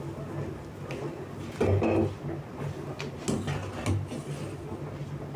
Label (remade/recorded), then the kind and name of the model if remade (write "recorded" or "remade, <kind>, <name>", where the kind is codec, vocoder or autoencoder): recorded